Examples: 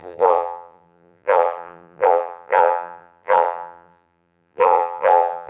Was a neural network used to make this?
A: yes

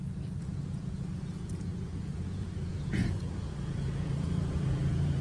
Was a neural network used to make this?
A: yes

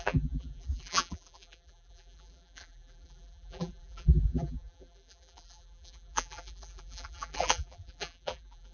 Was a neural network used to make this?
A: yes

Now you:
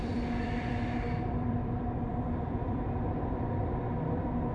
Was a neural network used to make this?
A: yes